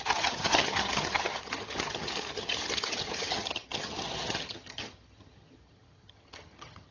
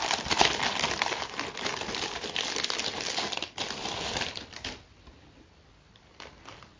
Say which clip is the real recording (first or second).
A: second